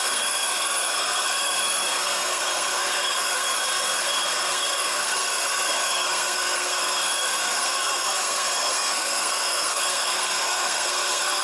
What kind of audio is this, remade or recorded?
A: remade